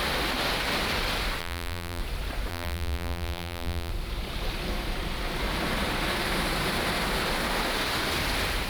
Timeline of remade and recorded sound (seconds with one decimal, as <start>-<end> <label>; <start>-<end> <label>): 0.0-1.4 recorded; 1.4-2.0 remade; 2.0-2.5 recorded; 2.5-3.9 remade; 3.9-8.7 recorded